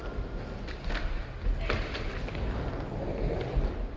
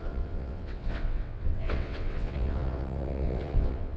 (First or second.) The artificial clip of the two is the second